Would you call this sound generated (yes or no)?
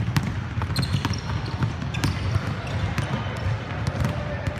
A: no